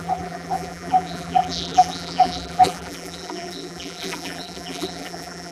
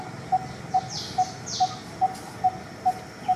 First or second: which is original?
second